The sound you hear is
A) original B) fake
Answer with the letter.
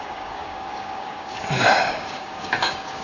B